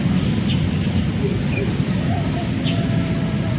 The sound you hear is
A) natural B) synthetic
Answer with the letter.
A